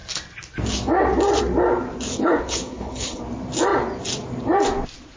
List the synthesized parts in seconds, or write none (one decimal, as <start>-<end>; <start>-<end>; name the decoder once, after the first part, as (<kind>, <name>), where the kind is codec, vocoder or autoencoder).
2.1-3.2 (codec, HILCodec)